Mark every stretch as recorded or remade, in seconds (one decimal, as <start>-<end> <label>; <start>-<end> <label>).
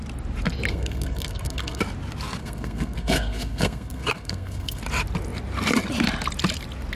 0.0-0.7 recorded; 0.7-1.8 remade; 1.8-2.4 recorded; 2.4-4.8 remade; 4.8-6.9 recorded